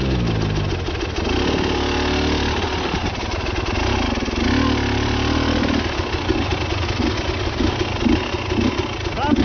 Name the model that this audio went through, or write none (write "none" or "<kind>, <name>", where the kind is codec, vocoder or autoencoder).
none